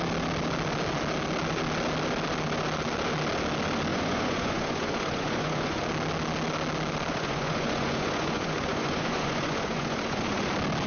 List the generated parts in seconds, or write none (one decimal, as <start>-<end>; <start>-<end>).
3.9-5.8; 7.1-10.5